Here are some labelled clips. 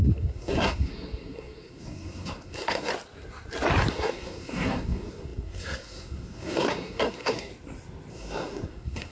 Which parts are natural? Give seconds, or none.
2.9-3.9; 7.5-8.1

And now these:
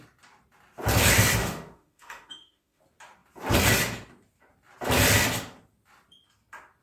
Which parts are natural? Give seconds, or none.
0.0-1.4; 2.8-6.8

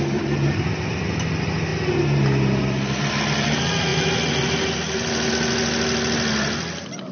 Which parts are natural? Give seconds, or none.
0.0-7.1

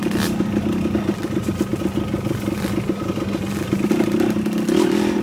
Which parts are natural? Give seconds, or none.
0.0-5.2